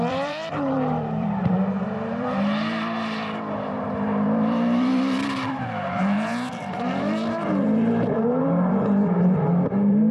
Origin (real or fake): fake